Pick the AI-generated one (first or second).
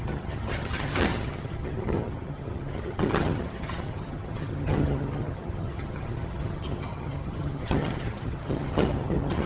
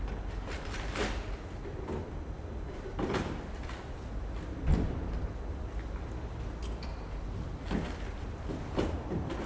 first